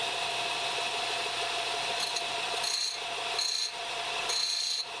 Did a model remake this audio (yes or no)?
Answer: no